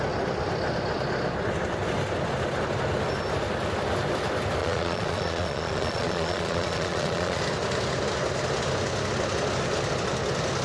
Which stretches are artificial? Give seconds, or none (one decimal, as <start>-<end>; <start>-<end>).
4.6-7.4